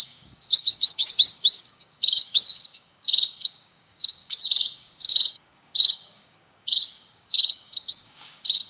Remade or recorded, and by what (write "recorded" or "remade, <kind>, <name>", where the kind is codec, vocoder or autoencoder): remade, codec, DAC